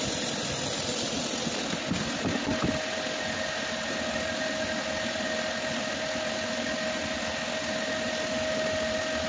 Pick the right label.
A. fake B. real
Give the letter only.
B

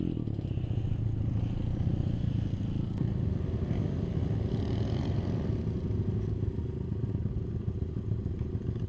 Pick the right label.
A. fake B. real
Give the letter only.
B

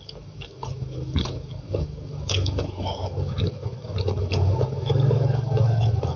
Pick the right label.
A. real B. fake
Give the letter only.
B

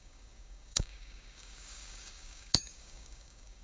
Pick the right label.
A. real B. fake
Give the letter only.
B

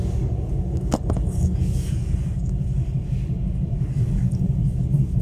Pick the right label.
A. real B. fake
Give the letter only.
B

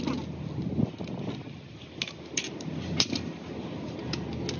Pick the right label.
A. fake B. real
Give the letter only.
B